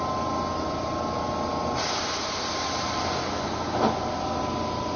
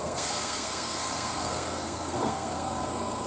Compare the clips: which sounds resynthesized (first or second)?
second